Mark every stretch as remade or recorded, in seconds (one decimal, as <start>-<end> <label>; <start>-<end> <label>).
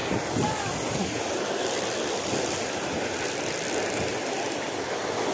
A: 0.0-5.3 recorded